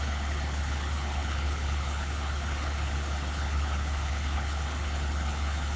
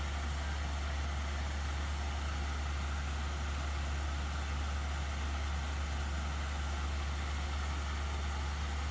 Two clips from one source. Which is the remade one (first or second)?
first